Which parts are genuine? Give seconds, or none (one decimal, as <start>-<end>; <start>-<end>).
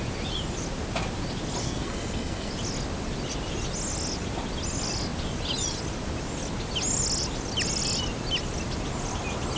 0.0-1.6; 2.5-9.6